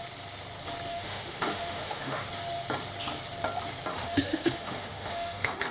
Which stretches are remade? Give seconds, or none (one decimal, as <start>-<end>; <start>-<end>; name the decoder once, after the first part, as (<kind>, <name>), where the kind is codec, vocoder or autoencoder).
0.9-2.3 (autoencoder, DAC-VAE); 3.9-5.7